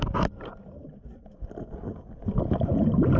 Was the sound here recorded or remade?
recorded